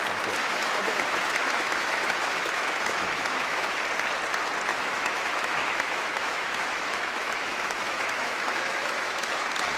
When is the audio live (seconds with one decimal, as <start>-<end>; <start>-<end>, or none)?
0.0-0.4; 3.8-4.7; 9.3-9.8

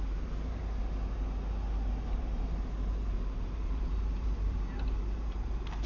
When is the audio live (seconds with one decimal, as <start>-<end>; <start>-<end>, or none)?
0.6-2.2